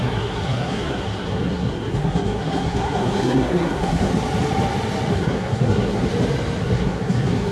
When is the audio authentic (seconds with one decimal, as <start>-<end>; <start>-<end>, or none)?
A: 4.1-5.1; 6.1-6.6